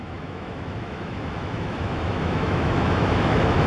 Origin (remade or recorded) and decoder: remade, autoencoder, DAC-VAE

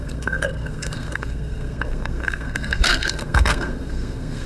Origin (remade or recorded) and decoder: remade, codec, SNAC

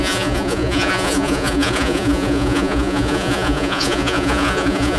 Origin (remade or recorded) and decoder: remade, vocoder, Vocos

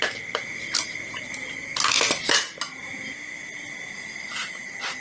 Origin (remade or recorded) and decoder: recorded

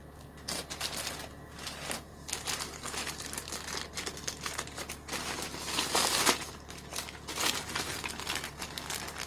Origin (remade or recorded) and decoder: recorded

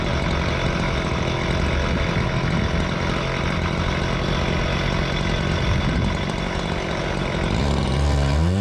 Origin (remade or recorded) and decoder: recorded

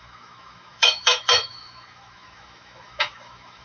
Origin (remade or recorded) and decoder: remade, autoencoder, DAC-VAE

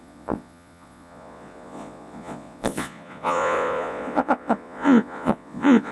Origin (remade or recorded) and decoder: remade, vocoder, Vocos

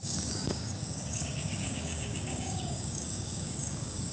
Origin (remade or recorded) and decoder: remade, codec, DAC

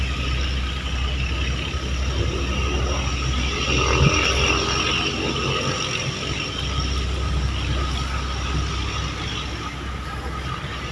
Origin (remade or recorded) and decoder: recorded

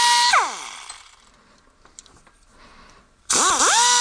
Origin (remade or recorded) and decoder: recorded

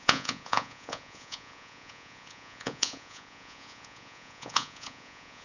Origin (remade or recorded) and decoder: remade, vocoder, Vocos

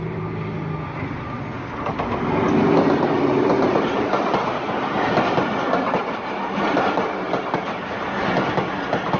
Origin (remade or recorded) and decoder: recorded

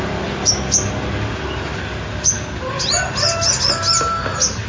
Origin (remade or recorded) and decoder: recorded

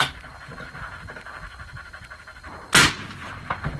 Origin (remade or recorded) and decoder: recorded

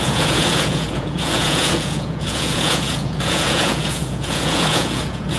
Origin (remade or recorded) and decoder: remade, vocoder, Vocos